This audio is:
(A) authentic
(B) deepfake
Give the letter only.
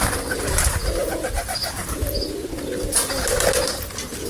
A